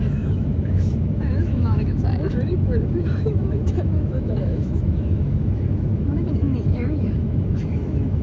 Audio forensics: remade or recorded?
remade